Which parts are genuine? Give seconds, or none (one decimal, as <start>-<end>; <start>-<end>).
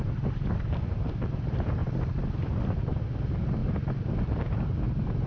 1.8-2.6